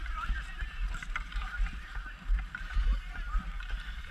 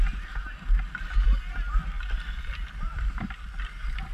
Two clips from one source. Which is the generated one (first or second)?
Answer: first